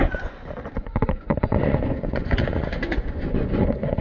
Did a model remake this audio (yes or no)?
yes